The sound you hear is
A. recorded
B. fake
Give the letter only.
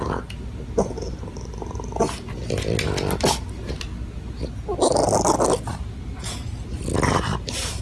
A